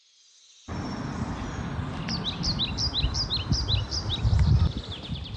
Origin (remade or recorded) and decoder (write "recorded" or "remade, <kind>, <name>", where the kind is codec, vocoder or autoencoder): recorded